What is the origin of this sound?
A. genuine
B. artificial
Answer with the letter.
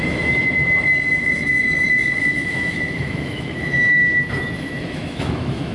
B